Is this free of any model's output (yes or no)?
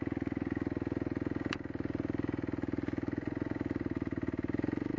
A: yes